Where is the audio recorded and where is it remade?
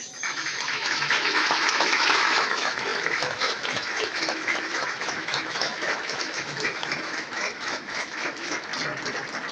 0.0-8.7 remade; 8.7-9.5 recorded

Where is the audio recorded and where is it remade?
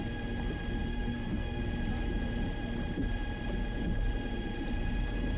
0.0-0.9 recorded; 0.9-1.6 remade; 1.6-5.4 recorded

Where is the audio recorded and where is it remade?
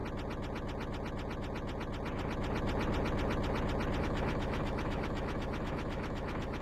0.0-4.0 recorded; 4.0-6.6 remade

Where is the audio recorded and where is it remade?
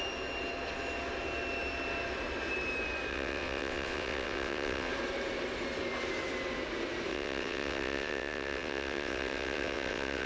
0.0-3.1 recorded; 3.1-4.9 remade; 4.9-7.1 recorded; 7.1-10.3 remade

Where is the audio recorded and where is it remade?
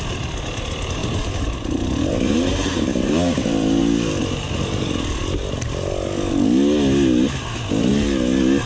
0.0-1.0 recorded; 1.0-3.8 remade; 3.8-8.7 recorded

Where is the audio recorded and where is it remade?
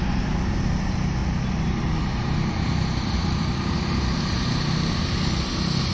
0.0-1.2 remade; 1.2-2.0 recorded; 2.0-5.9 remade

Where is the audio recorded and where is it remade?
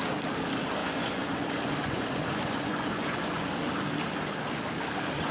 0.0-0.8 recorded; 0.8-3.5 remade; 3.5-5.3 recorded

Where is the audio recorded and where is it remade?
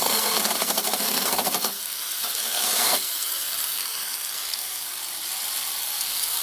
0.0-5.0 remade; 5.0-5.8 recorded; 5.8-6.4 remade